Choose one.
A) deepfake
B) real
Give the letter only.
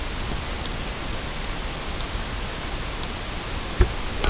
B